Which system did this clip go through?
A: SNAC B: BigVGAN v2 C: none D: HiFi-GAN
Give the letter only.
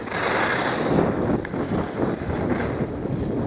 C